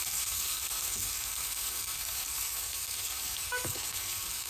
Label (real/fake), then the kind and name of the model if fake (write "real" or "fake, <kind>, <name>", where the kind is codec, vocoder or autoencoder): fake, codec, SNAC